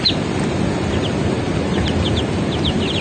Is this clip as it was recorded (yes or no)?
yes